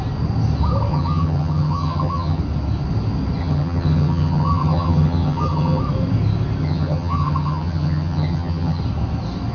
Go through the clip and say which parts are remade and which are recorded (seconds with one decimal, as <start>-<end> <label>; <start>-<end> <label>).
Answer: 0.0-0.9 recorded; 0.9-2.4 remade; 2.4-3.4 recorded; 3.4-5.8 remade; 5.8-6.6 recorded; 6.6-8.8 remade; 8.8-9.5 recorded